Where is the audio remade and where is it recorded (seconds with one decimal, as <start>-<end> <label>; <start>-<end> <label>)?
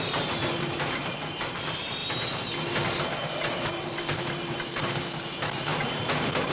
0.0-2.0 remade; 2.0-3.7 recorded; 3.7-5.7 remade; 5.7-6.5 recorded